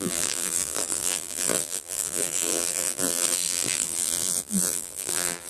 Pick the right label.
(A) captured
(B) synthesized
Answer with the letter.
B